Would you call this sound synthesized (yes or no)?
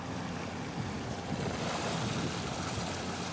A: no